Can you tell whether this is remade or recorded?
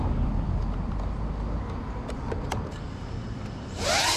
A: remade